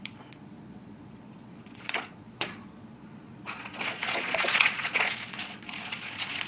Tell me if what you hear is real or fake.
fake